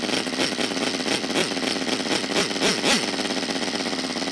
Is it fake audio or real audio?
real